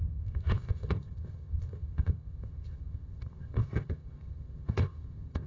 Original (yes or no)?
no